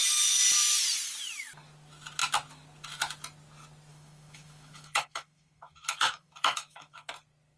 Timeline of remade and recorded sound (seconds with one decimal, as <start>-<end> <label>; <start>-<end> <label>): 0.0-3.9 recorded; 3.9-7.1 remade; 7.1-7.6 recorded

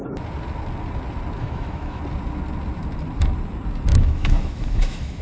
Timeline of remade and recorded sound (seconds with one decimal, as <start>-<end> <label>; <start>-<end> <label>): 0.0-1.4 recorded; 1.4-2.0 remade; 2.0-3.9 recorded; 3.9-5.2 remade

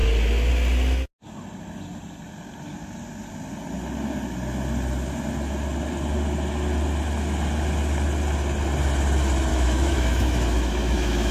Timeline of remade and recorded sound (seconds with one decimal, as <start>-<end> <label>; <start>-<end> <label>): 0.0-9.5 recorded; 9.5-11.3 remade

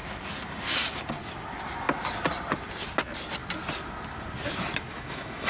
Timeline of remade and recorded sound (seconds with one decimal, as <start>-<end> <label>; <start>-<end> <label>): 0.0-4.9 recorded; 4.9-5.5 remade